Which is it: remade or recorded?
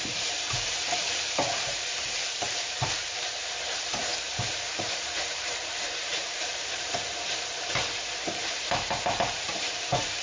remade